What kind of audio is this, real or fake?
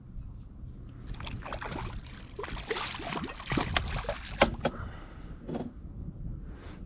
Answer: real